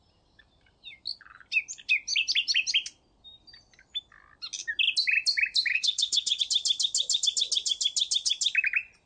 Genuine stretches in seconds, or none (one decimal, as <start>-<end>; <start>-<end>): 0.0-5.7; 6.4-9.1